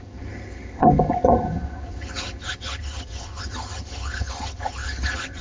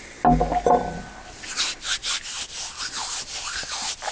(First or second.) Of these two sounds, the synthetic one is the first